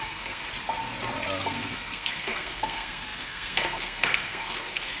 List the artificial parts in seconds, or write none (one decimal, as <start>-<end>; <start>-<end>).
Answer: 0.0-0.4; 1.4-5.0